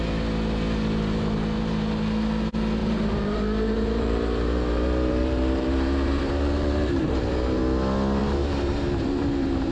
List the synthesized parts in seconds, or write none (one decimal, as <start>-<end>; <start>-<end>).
2.8-7.6; 8.2-9.7